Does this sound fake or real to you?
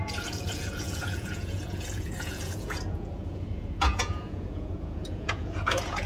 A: fake